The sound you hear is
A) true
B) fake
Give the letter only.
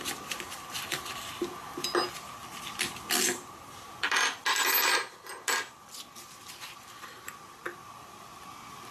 A